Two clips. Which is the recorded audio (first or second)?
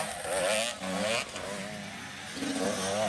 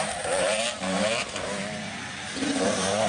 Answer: first